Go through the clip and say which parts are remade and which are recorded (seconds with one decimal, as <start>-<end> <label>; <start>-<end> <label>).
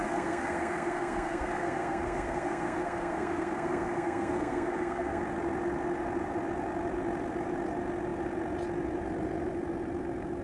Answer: 0.0-5.2 remade; 5.2-10.4 recorded